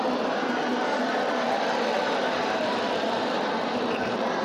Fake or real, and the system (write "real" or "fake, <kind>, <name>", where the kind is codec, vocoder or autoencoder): fake, vocoder, BigVGAN v2